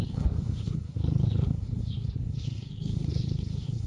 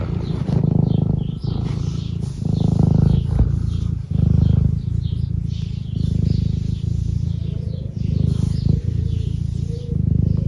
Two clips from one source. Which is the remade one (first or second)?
first